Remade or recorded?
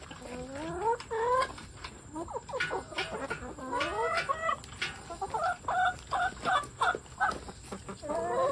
recorded